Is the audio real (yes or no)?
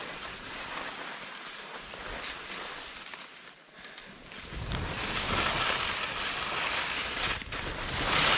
yes